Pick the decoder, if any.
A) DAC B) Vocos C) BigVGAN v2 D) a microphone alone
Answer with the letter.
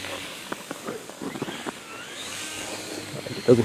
A